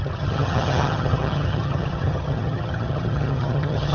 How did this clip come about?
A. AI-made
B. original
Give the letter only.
A